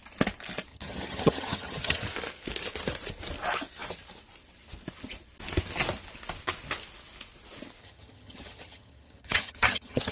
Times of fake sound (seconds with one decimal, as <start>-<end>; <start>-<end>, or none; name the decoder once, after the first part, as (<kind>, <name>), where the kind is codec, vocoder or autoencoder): 0.7-2.0 (vocoder, HiFi-GAN); 7.8-10.1